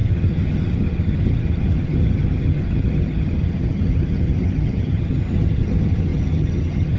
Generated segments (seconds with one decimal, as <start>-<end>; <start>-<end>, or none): 0.0-7.0